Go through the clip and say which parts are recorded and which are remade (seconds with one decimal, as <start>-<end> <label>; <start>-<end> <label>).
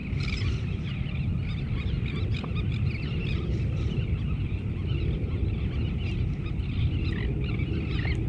0.0-5.8 remade; 5.8-8.3 recorded